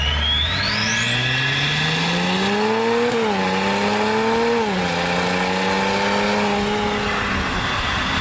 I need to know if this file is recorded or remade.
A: recorded